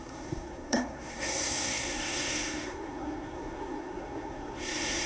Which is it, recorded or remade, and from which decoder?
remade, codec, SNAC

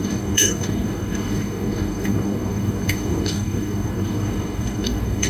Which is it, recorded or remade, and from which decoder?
remade, codec, DAC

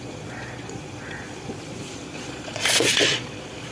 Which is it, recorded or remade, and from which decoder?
remade, vocoder, Vocos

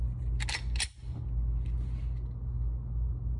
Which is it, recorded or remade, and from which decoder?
recorded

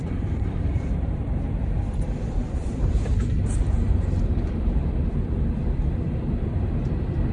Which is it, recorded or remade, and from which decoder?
remade, vocoder, BigVGAN v2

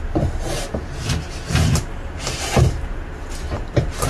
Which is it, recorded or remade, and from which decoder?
recorded